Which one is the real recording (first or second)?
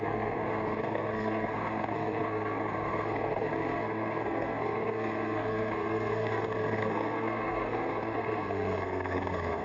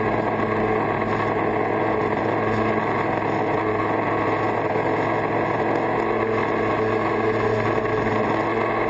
second